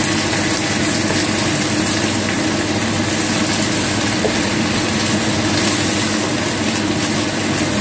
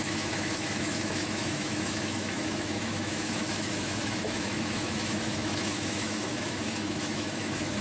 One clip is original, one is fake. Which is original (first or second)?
first